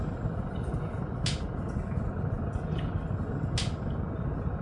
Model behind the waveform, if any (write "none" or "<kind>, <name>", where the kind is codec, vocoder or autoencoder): none